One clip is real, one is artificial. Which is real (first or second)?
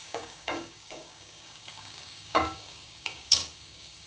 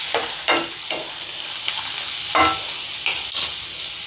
second